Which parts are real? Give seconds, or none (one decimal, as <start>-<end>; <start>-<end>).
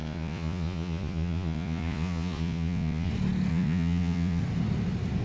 3.1-3.5; 4.4-5.2